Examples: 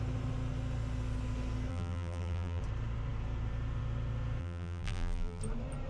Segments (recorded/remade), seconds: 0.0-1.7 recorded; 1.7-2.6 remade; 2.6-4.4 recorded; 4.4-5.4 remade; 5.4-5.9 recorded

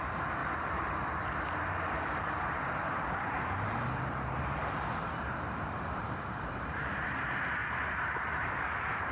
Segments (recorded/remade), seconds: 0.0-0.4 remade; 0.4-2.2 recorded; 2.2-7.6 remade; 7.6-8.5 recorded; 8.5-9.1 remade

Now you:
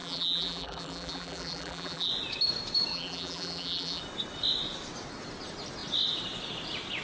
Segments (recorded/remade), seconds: 0.0-2.1 remade; 2.1-2.9 recorded; 2.9-4.0 remade; 4.0-7.0 recorded

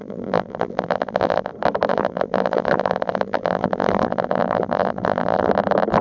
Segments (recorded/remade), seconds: 0.0-1.5 remade; 1.5-1.9 recorded; 1.9-5.5 remade; 5.5-6.0 recorded

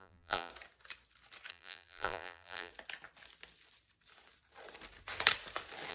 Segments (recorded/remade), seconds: 0.0-0.5 remade; 0.5-1.5 recorded; 1.5-2.7 remade; 2.7-5.9 recorded